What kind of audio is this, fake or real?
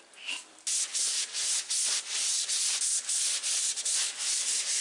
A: real